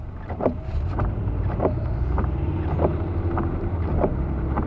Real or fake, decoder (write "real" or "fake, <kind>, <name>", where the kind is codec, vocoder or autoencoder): fake, vocoder, BigVGAN v2